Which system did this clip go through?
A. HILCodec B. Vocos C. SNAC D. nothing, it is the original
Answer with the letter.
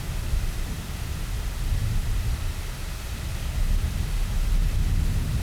D